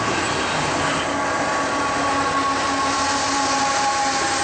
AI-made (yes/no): no